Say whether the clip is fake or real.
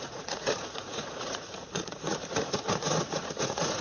fake